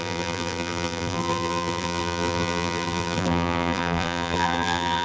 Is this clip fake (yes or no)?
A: yes